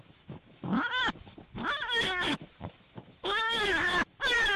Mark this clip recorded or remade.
remade